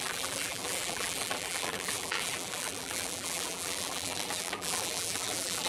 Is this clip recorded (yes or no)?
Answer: no